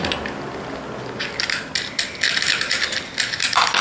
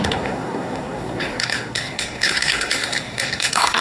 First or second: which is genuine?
first